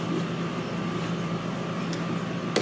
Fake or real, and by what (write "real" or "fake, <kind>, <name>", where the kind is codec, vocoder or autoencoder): real